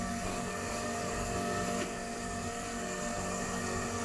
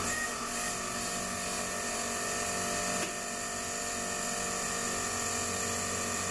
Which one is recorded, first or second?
second